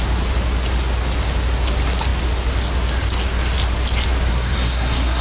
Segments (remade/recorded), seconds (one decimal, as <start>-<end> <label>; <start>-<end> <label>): 0.0-4.3 recorded; 4.3-5.2 remade